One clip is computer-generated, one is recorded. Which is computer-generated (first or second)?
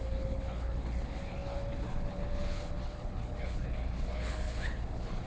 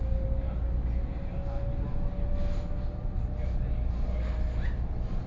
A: first